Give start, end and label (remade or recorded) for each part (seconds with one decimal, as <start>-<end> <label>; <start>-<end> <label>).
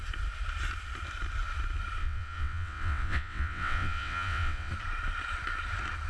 0.0-2.0 recorded; 2.0-4.7 remade; 4.7-6.1 recorded